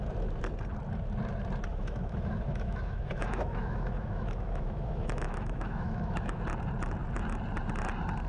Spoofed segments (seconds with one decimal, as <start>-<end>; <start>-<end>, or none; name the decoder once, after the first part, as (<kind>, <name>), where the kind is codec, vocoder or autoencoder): 1.7-6.4 (autoencoder, DAC-VAE)